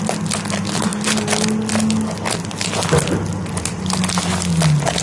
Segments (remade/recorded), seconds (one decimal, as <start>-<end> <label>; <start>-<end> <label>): 0.0-5.0 recorded